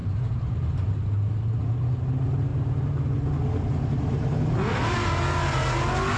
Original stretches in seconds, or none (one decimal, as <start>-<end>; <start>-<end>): 1.0-6.2